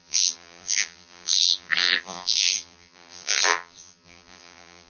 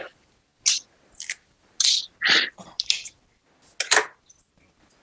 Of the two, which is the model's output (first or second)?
first